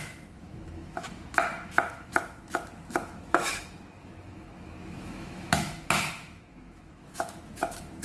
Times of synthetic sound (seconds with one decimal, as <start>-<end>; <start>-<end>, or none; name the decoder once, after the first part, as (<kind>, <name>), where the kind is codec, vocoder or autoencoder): 0.0-8.0 (autoencoder, DAC-VAE)